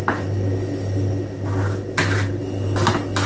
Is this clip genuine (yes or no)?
yes